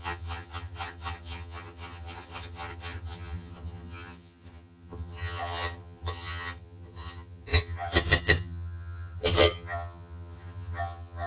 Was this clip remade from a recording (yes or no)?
yes